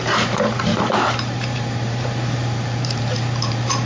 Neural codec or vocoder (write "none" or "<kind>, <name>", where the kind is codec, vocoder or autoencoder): vocoder, BigVGAN v2